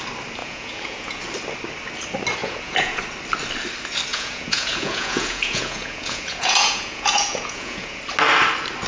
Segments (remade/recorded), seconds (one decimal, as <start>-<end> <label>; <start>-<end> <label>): 0.0-0.4 recorded; 0.4-1.2 remade; 1.2-2.4 recorded; 2.4-3.0 remade; 3.0-4.1 recorded; 4.1-8.0 remade; 8.0-8.9 recorded